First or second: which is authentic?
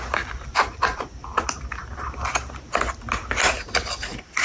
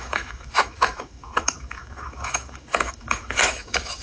first